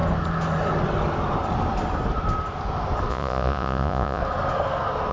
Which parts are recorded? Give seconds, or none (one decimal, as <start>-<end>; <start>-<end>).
0.0-3.1; 4.2-5.1